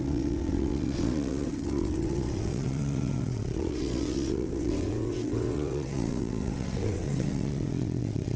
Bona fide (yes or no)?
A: no